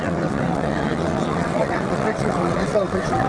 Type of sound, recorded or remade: remade